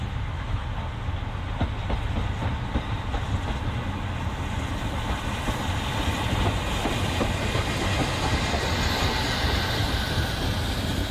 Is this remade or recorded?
recorded